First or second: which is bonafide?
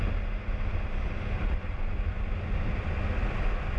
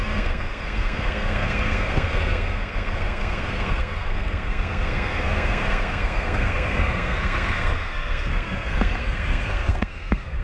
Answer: first